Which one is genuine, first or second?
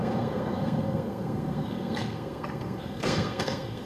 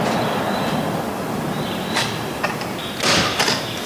second